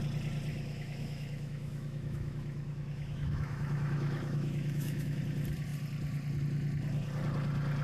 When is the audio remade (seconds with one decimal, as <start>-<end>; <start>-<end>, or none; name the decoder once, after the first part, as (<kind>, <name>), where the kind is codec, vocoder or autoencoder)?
0.5-5.2 (autoencoder, DAC-VAE)